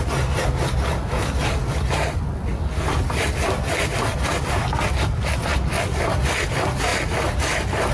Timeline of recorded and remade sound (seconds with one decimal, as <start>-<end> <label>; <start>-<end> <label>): 0.0-7.9 recorded